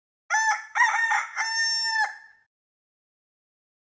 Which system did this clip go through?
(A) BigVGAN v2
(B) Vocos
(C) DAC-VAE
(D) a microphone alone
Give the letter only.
D